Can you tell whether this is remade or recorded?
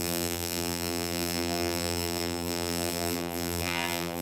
remade